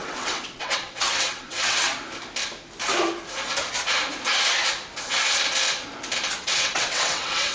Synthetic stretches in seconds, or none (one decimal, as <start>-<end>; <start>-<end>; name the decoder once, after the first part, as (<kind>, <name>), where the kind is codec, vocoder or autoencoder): 0.0-1.9 (vocoder, WaveNeXt); 6.4-7.5